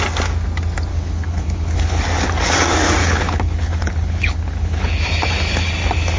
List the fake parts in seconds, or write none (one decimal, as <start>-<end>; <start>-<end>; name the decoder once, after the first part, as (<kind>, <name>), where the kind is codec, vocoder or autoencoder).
0.9-2.0 (codec, HILCodec); 3.0-5.0